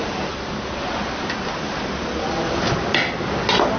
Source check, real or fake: real